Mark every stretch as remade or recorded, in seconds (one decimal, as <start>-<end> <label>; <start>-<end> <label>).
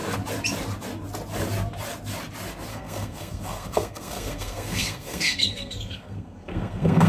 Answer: 0.0-2.7 recorded; 2.7-7.1 remade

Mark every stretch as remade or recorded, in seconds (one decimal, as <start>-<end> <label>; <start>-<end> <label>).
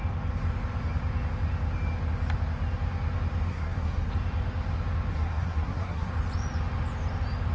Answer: 0.0-3.5 recorded; 3.5-4.1 remade; 4.1-5.1 recorded; 5.1-6.1 remade; 6.1-7.5 recorded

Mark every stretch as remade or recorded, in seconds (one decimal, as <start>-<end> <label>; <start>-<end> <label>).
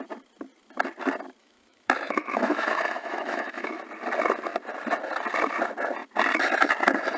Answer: 0.0-1.4 recorded; 1.4-3.8 remade; 3.8-7.2 recorded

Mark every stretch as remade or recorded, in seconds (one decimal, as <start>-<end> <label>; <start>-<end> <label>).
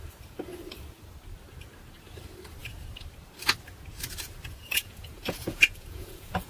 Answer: 0.0-4.5 recorded; 4.5-6.5 remade